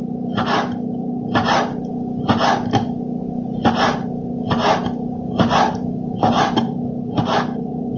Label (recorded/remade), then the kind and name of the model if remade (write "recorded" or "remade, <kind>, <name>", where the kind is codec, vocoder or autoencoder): recorded